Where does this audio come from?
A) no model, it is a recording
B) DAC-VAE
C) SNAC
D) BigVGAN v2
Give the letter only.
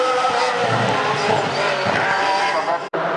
D